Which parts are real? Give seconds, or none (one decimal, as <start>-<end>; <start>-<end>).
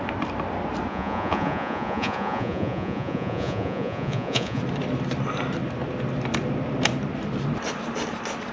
0.0-0.9; 4.6-8.5